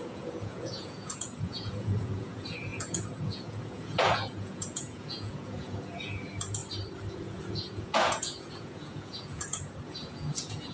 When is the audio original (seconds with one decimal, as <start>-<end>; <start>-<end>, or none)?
6.6-7.1